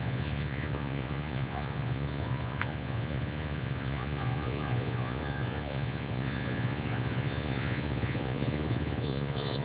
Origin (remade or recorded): remade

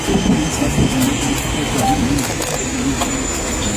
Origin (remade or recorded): recorded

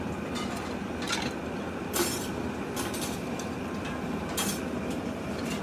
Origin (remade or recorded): recorded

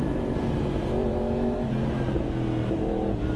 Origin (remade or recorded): recorded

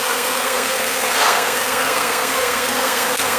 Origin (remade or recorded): remade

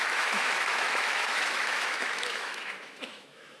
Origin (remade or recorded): remade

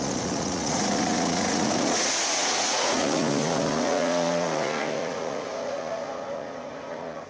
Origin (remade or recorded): remade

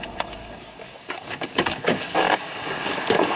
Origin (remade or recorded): remade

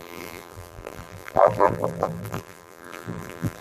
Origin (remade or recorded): remade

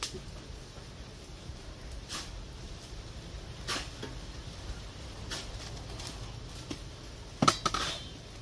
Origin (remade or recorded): recorded